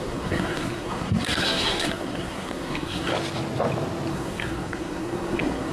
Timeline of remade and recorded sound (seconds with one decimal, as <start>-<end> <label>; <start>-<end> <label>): 0.0-3.1 remade; 3.1-4.1 recorded; 4.1-5.7 remade